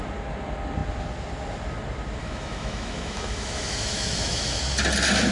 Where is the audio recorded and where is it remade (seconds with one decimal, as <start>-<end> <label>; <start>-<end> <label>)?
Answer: 0.0-2.2 recorded; 2.2-4.6 remade; 4.6-5.3 recorded